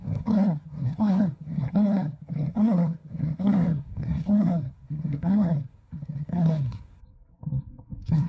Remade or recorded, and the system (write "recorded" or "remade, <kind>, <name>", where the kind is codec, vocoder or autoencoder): remade, codec, SNAC